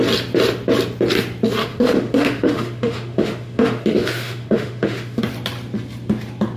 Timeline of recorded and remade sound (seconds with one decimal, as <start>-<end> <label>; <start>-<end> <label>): 0.0-1.6 recorded; 1.6-5.2 remade; 5.2-6.6 recorded